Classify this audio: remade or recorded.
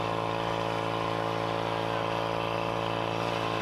recorded